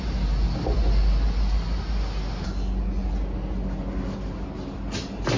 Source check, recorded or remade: recorded